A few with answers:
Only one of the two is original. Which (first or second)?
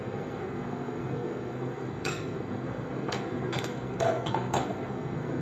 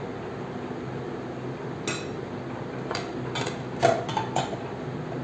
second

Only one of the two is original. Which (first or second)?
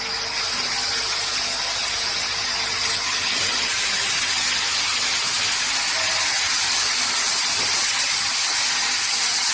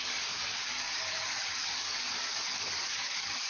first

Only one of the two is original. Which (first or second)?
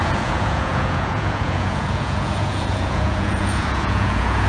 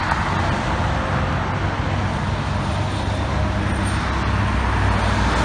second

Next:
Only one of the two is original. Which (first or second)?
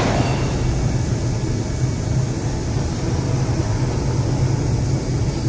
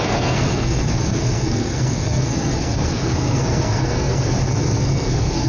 first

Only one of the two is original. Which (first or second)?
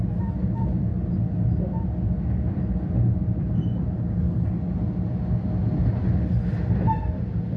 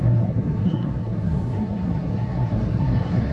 first